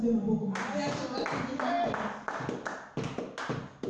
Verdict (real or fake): real